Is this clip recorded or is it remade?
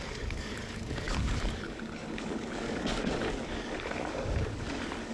remade